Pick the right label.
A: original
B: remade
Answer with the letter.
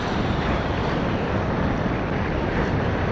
A